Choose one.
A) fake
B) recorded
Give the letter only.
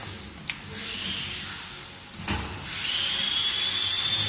B